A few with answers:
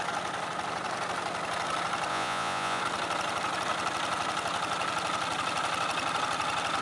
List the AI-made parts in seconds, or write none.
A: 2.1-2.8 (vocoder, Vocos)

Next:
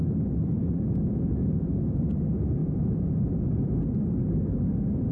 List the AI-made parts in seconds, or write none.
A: 0.5-2.0 (vocoder, Vocos); 2.6-3.8

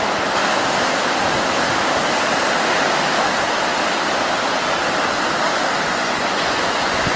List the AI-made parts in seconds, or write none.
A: 5.9-7.2 (vocoder, Vocos)

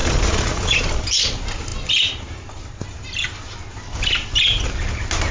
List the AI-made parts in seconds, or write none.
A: 0.0-0.8 (vocoder, Vocos)

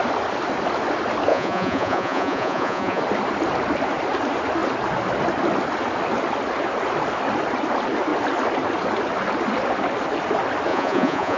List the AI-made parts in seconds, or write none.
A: 1.3-3.0 (vocoder, Vocos); 10.7-11.4

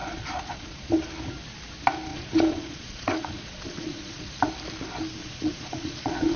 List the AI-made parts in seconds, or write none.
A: 0.0-0.9 (vocoder, Vocos); 2.1-4.3; 5.2-6.4

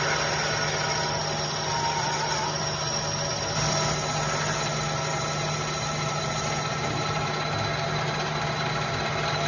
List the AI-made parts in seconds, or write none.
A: none

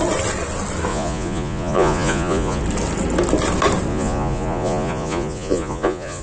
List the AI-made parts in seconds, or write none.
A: 0.9-2.6 (vocoder, Vocos); 3.9-6.2